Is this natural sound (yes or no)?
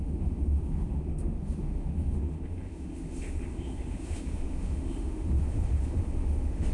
no